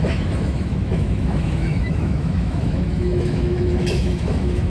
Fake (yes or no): yes